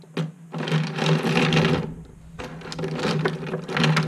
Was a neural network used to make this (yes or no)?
no